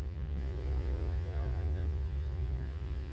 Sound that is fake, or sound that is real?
fake